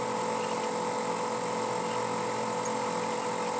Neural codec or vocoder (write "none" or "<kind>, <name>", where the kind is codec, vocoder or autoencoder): none